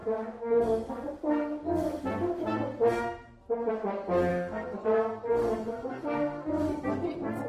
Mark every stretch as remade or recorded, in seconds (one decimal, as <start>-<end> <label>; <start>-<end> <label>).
0.0-4.3 recorded; 4.3-4.8 remade; 4.8-5.4 recorded; 5.4-6.8 remade; 6.8-7.5 recorded